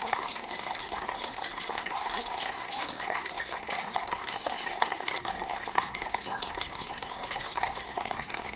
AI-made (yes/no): yes